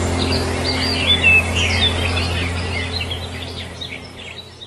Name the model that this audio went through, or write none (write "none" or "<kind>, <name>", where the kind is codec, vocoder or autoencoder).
none